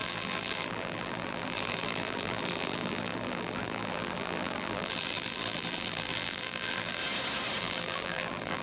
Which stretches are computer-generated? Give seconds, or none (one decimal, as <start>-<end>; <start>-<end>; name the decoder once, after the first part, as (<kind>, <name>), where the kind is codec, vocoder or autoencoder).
0.0-7.0 (vocoder, BigVGAN v2); 7.6-8.6